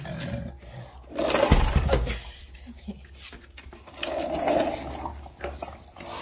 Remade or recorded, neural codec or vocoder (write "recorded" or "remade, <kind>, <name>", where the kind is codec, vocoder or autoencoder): recorded